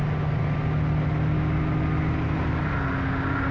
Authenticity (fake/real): real